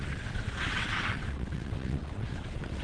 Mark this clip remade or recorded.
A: remade